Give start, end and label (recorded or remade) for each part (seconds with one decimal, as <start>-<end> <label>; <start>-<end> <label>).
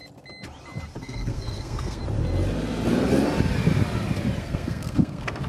0.0-1.0 recorded; 1.0-2.0 remade; 2.0-4.4 recorded; 4.4-5.5 remade